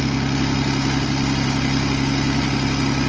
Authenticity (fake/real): real